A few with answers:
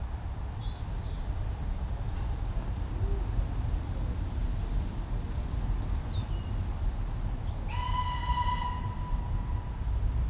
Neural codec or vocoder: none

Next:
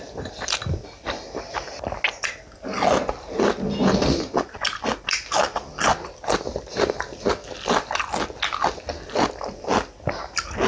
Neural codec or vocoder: none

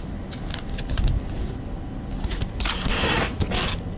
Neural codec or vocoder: none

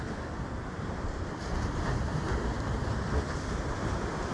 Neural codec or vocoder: vocoder, BigVGAN v2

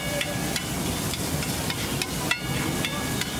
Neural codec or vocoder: none